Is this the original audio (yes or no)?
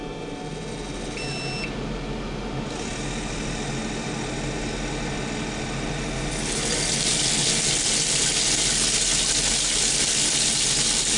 yes